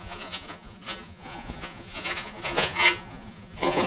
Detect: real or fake fake